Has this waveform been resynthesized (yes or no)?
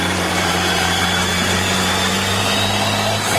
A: yes